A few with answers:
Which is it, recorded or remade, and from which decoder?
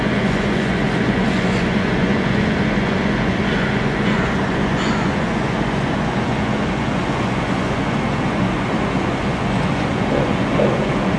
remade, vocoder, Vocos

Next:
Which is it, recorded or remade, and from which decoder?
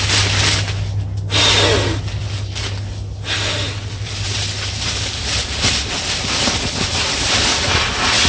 recorded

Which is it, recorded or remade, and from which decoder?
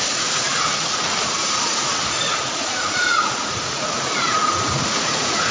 remade, vocoder, Vocos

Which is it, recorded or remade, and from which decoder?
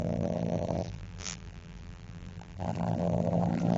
remade, vocoder, BigVGAN v2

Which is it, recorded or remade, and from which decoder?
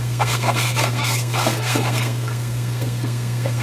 remade, codec, SNAC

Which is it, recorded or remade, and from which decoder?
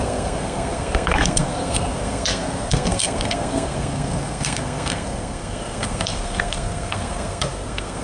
remade, codec, SNAC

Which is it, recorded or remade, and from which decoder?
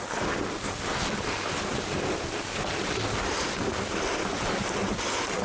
recorded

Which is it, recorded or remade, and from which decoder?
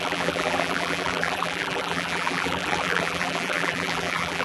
remade, vocoder, BigVGAN v2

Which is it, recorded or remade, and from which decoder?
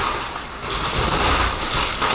recorded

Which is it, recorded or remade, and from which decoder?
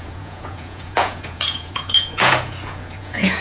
remade, vocoder, Vocos